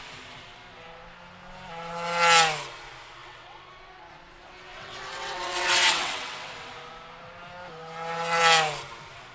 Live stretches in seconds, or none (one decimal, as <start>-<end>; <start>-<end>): 0.0-3.2; 3.7-4.7; 6.7-9.3